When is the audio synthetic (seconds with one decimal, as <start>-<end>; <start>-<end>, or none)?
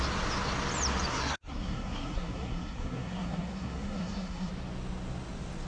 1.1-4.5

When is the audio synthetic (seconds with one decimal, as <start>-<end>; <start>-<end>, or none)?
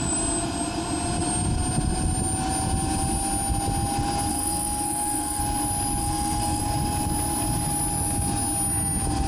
4.3-5.4; 6.0-6.6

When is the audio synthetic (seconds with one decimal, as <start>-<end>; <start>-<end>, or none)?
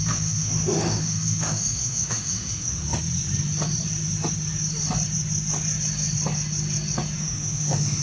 0.0-2.8; 7.2-8.0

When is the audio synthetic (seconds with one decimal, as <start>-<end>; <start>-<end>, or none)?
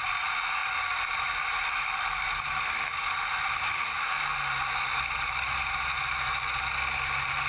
0.6-2.3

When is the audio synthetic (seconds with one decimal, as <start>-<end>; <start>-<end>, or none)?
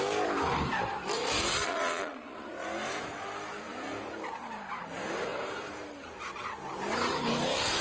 1.5-2.5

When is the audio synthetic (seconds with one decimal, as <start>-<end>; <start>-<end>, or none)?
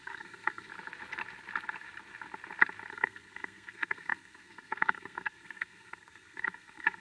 0.0-0.7; 2.9-7.0